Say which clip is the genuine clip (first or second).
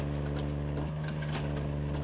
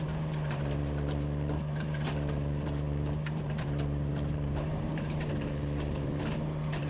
first